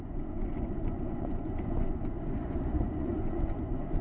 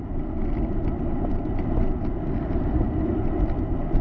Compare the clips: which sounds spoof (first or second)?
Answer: first